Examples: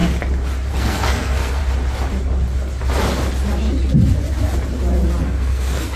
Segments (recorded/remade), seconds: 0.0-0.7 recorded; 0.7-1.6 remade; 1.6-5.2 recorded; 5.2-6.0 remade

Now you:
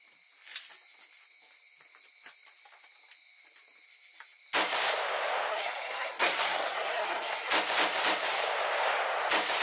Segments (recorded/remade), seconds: 0.0-5.5 recorded; 5.5-7.5 remade; 7.5-9.6 recorded

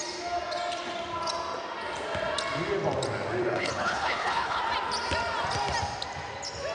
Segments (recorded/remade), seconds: 0.0-3.4 recorded; 3.4-4.6 remade; 4.6-6.7 recorded

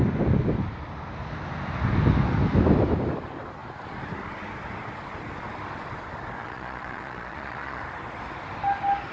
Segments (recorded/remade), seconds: 0.0-6.4 recorded; 6.4-7.8 remade; 7.8-9.1 recorded

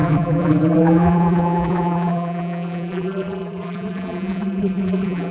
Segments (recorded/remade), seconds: 0.0-5.3 remade